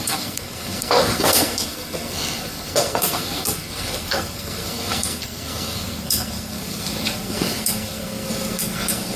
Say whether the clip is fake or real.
fake